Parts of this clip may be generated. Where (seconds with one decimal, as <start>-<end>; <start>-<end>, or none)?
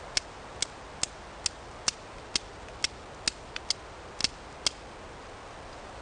none